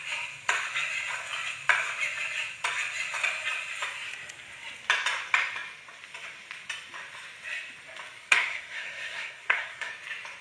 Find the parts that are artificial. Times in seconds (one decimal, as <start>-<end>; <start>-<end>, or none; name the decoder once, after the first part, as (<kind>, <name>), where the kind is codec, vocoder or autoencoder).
8.2-9.9 (codec, SNAC)

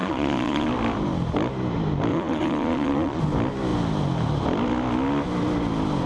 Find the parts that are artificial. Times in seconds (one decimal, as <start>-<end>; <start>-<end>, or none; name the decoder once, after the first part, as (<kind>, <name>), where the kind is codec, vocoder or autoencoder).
0.0-0.7 (vocoder, Vocos); 2.1-3.2

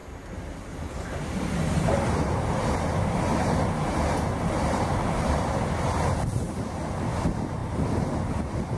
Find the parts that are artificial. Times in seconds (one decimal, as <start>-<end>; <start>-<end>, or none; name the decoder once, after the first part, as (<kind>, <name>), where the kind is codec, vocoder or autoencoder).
0.0-0.7 (vocoder, BigVGAN v2); 3.3-6.7

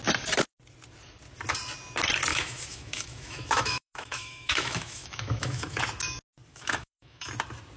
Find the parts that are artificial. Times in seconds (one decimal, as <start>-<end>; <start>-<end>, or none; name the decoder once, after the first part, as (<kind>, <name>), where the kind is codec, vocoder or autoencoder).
2.3-5.8 (autoencoder, DAC-VAE); 6.5-7.3

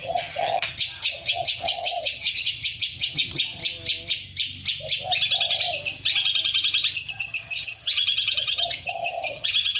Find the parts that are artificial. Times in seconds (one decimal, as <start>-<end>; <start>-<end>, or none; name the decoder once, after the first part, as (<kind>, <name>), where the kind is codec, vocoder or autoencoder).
0.0-3.6 (vocoder, HiFi-GAN); 7.1-9.8